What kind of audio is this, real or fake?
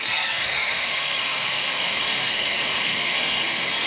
fake